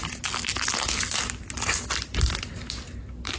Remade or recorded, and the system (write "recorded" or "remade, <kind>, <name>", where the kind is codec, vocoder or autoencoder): recorded